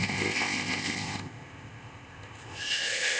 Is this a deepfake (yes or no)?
yes